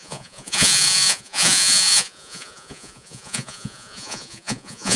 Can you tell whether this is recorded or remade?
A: remade